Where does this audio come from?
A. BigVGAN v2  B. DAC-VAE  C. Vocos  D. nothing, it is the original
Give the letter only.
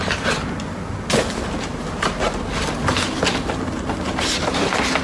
D